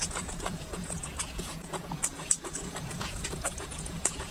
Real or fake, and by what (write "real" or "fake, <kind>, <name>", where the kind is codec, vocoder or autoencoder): fake, vocoder, Vocos